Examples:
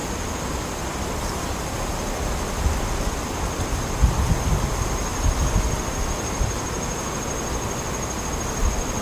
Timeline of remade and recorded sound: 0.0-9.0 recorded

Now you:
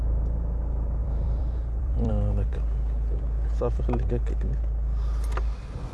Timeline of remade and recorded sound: 0.0-1.0 recorded; 1.0-2.1 remade; 2.1-2.5 recorded; 2.5-4.1 remade; 4.1-5.9 recorded

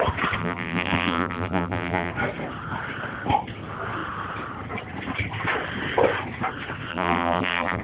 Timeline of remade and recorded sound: 0.0-0.4 recorded; 0.4-2.1 remade; 2.1-6.9 recorded; 6.9-7.8 remade

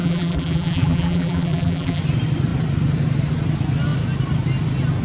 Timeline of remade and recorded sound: 0.0-2.0 remade; 2.0-5.0 recorded

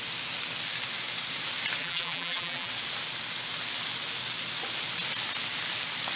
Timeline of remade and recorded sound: 0.0-1.8 recorded; 1.8-2.7 remade; 2.7-6.2 recorded